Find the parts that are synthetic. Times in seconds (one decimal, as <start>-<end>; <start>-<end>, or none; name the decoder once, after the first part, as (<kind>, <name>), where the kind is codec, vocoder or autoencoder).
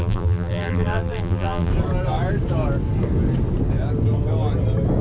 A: 0.0-1.7 (vocoder, BigVGAN v2)